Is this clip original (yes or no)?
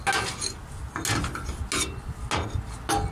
yes